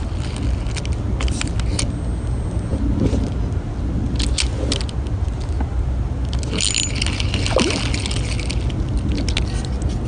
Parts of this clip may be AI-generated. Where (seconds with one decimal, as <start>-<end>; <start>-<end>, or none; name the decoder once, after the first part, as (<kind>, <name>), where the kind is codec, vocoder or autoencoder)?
none